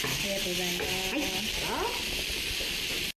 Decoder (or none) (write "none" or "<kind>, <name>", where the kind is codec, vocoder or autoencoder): none